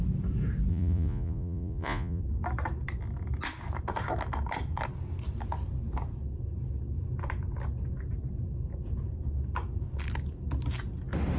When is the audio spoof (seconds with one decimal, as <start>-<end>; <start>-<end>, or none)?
0.7-2.2